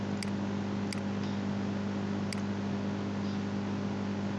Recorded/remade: recorded